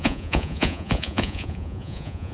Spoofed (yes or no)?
yes